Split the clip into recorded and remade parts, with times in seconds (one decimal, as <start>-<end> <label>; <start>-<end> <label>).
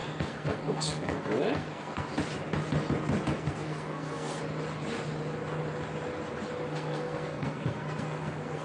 0.0-2.1 remade; 2.1-3.3 recorded; 3.3-4.4 remade; 4.4-6.7 recorded; 6.7-8.6 remade